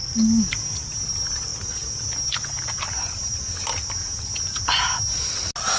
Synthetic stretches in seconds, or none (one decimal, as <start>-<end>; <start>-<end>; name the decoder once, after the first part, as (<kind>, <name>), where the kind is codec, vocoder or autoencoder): none